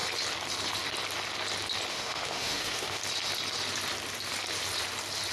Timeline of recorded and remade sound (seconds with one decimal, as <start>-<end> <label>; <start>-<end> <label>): 0.0-1.9 recorded; 1.9-3.0 remade; 3.0-5.3 recorded